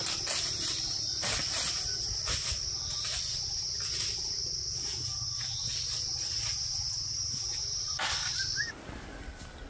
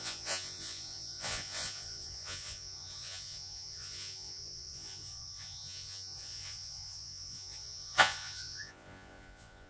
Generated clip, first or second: second